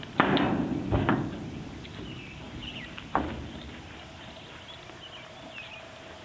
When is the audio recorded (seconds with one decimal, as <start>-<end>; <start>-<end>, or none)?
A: 0.0-6.2